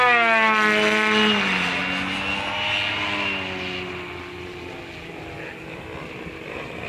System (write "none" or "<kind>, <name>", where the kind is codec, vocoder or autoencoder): none